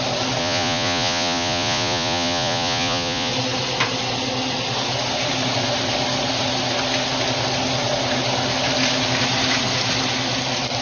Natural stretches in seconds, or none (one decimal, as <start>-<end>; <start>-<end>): 0.0-0.4; 3.3-10.8